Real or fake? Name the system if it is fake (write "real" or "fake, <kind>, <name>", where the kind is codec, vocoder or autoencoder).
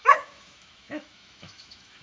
fake, autoencoder, DAC-VAE